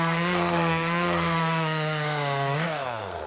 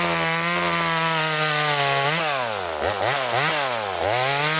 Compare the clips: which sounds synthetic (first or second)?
first